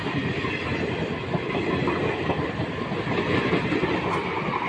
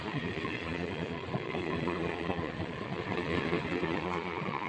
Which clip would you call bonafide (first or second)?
first